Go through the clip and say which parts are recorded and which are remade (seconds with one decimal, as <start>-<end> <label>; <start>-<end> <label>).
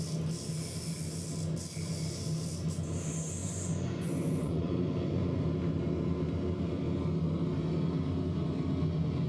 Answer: 0.0-3.4 recorded; 3.4-5.4 remade; 5.4-9.3 recorded